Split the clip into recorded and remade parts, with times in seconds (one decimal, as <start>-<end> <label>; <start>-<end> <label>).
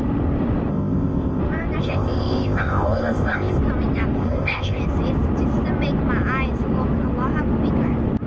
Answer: 0.0-0.7 recorded; 0.7-1.4 remade; 1.4-1.8 recorded; 1.8-3.6 remade; 3.6-4.2 recorded; 4.2-4.8 remade; 4.8-8.3 recorded